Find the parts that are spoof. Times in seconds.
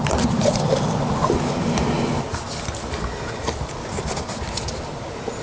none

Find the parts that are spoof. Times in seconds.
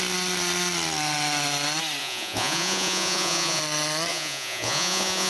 2.0-3.6 (vocoder, Vocos); 4.1-5.3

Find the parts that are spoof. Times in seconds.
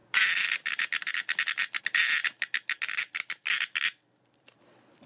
none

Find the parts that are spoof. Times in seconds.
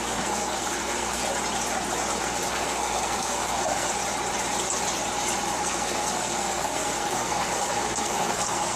0.0-1.2 (codec, SNAC); 2.2-3.9; 5.6-8.8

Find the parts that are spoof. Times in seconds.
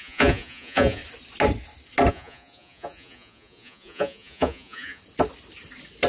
0.0-1.0 (vocoder, Vocos); 2.1-5.0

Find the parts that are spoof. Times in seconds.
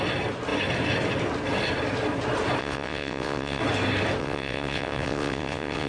2.6-3.6 (vocoder, WaveNeXt); 4.2-5.9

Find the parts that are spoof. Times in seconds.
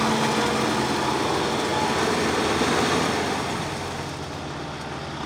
none